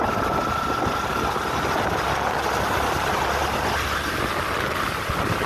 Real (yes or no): yes